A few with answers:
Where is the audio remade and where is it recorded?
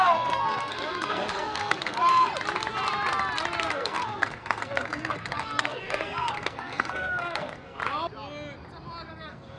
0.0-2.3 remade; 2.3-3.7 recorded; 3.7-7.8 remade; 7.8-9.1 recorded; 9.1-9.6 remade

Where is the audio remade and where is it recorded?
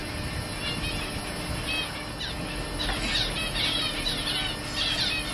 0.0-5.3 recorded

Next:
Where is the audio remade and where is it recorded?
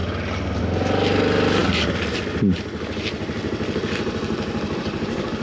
0.0-5.4 recorded